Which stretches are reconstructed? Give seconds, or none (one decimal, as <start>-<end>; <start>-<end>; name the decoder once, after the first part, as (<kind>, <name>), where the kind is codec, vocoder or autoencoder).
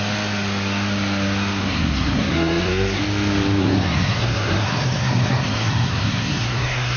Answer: 1.6-3.0 (codec, SNAC); 3.6-7.0